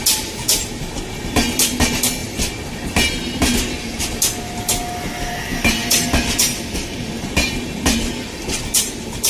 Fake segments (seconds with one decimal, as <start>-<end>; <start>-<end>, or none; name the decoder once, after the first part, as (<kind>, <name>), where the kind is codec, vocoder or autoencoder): none